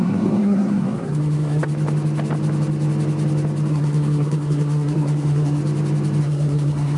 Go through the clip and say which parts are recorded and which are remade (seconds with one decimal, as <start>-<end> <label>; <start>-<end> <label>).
0.0-1.7 remade; 1.7-3.7 recorded; 3.7-5.6 remade; 5.6-6.2 recorded; 6.2-7.0 remade